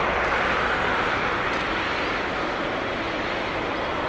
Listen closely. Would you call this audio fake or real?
real